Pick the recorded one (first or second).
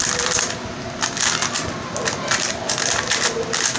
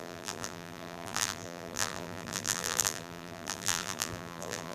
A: first